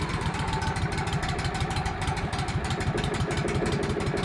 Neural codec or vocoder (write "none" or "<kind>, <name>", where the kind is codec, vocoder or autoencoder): none